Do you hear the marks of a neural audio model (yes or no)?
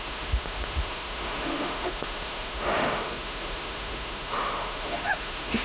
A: yes